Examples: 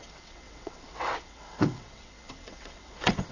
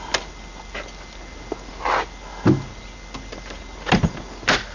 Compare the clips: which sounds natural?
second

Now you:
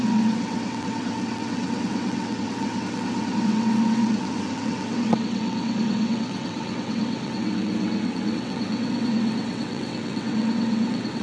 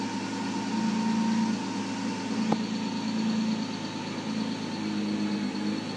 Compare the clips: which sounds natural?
second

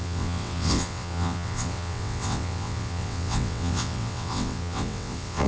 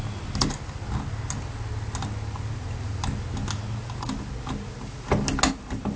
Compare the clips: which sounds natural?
second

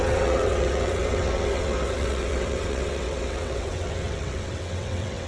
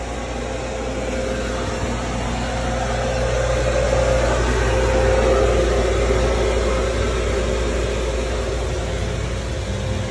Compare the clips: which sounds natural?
second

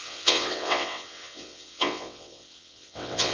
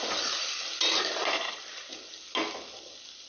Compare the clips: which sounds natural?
second